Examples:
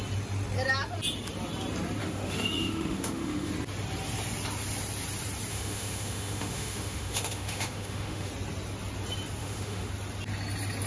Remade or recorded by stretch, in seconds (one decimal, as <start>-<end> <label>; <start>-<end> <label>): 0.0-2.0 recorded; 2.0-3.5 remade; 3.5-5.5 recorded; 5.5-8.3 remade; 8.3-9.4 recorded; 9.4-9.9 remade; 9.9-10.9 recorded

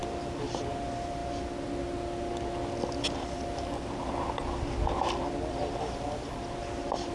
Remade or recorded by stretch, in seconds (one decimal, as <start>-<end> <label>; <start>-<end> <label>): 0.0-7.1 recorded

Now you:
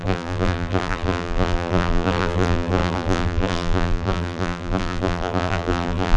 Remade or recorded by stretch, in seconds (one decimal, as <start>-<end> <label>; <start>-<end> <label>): 0.0-6.2 remade

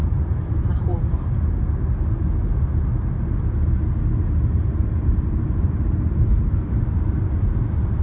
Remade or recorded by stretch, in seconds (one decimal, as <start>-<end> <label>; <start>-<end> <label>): 0.0-1.6 remade; 1.6-4.7 recorded; 4.7-7.0 remade; 7.0-8.0 recorded

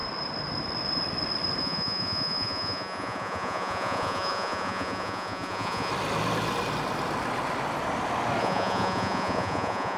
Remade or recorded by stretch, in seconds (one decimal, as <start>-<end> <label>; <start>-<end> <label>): 0.0-1.6 recorded; 1.6-5.9 remade; 5.9-8.4 recorded; 8.4-10.0 remade

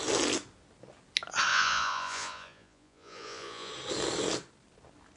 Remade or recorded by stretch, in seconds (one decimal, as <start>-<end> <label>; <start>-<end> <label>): 0.0-1.5 recorded; 1.5-3.7 remade; 3.7-5.2 recorded

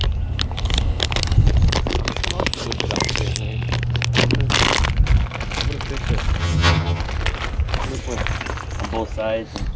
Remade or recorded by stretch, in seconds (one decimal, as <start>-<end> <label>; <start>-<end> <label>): 0.0-6.4 recorded; 6.4-7.0 remade; 7.0-9.8 recorded